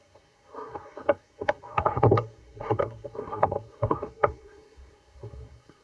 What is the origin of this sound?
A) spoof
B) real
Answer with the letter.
A